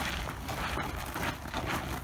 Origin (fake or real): real